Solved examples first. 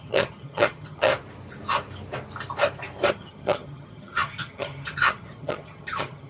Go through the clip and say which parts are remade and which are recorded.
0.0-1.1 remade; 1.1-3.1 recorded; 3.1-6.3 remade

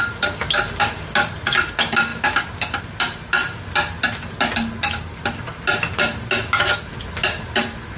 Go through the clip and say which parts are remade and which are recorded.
0.0-8.0 recorded

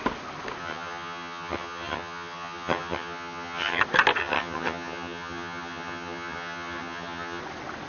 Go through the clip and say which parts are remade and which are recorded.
0.0-0.6 recorded; 0.6-3.8 remade; 3.8-4.2 recorded; 4.2-7.4 remade; 7.4-7.9 recorded

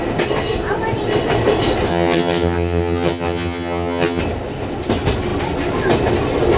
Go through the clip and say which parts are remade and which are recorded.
0.0-1.9 recorded; 1.9-4.2 remade; 4.2-6.6 recorded